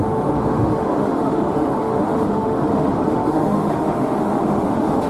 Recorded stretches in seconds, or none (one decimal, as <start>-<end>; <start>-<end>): none